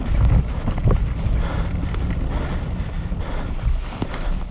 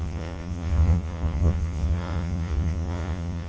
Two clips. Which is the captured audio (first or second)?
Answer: first